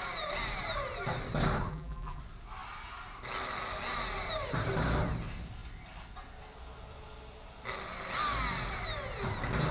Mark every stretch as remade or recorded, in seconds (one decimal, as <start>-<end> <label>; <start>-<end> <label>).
0.0-1.7 recorded; 1.7-2.2 remade; 2.2-9.7 recorded